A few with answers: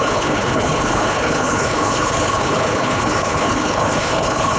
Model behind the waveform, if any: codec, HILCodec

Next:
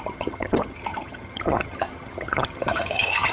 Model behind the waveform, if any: vocoder, HiFi-GAN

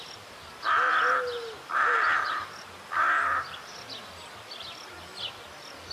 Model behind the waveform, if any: none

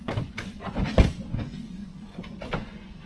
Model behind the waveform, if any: vocoder, Vocos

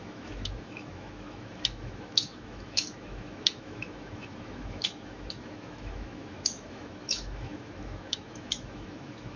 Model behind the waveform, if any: autoencoder, DAC-VAE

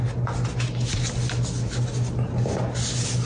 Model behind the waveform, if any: none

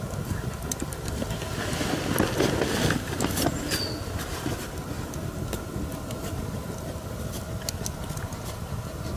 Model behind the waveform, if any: none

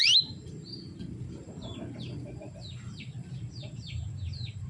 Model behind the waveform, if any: vocoder, BigVGAN v2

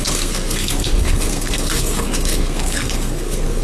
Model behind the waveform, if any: codec, SNAC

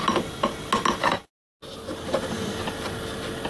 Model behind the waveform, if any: none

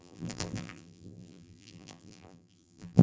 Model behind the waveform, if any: vocoder, BigVGAN v2